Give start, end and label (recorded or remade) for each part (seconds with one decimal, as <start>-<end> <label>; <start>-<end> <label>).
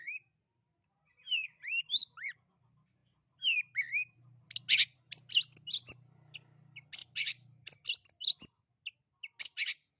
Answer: 0.0-10.0 recorded